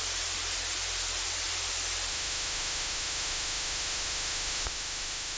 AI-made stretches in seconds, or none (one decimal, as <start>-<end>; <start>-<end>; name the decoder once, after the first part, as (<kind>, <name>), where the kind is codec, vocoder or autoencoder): 2.1-5.4 (autoencoder, DAC-VAE)